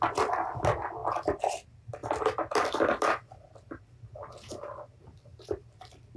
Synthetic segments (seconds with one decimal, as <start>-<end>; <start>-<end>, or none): none